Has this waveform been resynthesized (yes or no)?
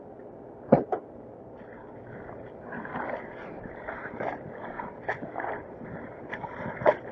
yes